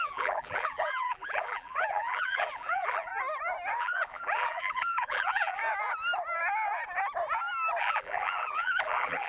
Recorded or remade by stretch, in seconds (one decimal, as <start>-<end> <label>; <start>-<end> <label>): 0.0-3.1 remade; 3.1-3.8 recorded; 3.8-5.6 remade; 5.6-7.8 recorded; 7.8-9.3 remade